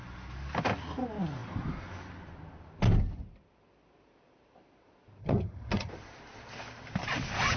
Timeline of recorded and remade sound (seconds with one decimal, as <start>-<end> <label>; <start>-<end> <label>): 0.0-5.2 recorded; 5.2-5.9 remade; 5.9-7.6 recorded